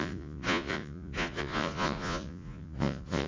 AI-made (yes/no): yes